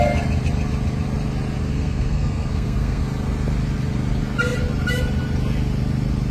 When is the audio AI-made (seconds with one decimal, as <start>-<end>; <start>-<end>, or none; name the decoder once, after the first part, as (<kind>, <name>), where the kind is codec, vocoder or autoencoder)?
1.7-3.0 (codec, SNAC)

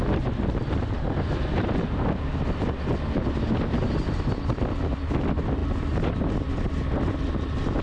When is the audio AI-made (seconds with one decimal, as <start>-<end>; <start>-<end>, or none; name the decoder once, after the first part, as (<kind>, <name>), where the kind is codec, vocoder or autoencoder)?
none

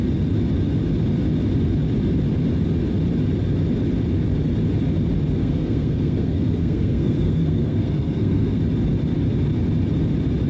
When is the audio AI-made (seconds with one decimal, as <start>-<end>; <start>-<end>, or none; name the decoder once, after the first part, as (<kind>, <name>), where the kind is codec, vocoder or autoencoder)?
5.4-8.6 (codec, SNAC)

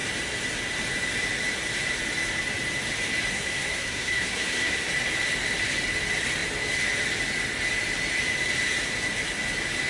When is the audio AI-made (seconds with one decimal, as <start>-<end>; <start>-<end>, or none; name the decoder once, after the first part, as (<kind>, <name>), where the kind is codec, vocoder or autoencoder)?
3.3-4.9 (codec, SNAC)

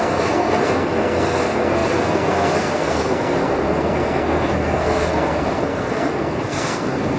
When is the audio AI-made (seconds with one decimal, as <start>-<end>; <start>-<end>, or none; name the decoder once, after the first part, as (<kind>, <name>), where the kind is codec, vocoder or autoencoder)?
0.0-7.2 (codec, SNAC)